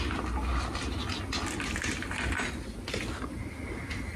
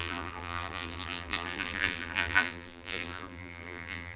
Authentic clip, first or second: first